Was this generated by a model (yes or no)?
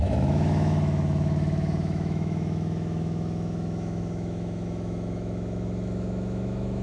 yes